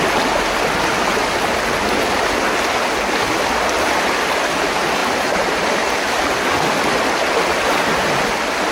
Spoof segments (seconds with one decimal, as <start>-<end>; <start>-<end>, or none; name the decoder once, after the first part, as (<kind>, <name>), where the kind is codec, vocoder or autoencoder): 5.0-5.9 (vocoder, BigVGAN v2)